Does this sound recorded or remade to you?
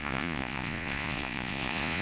remade